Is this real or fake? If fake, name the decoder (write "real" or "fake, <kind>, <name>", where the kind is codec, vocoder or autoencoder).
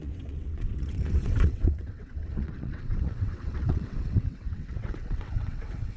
fake, vocoder, WaveNeXt